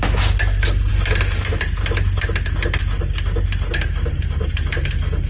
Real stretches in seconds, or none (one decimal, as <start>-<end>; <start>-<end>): 0.0-5.3